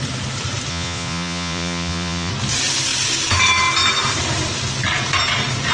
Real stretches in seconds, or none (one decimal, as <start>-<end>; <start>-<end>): 0.0-0.7; 2.3-5.7